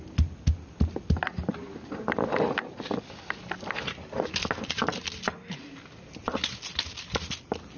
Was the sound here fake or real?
real